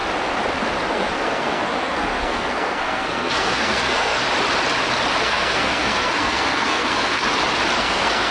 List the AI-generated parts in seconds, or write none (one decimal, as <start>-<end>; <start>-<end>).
0.9-4.2; 5.2-7.2; 7.8-8.3